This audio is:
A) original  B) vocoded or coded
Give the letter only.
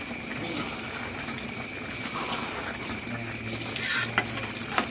A